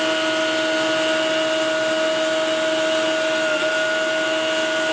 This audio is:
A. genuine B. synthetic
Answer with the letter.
A